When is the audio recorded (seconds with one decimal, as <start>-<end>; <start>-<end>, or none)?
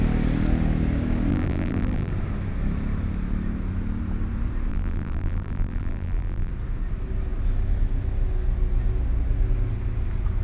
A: 0.0-1.3; 2.1-4.7; 6.5-10.4